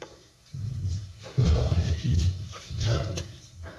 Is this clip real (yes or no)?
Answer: no